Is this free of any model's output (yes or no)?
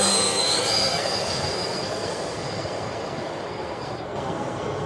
no